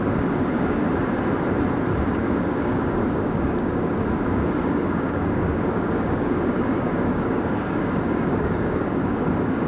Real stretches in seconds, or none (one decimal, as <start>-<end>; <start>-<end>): 0.8-2.1